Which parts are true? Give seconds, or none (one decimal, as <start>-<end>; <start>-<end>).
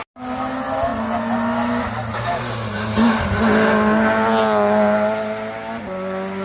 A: 0.0-6.4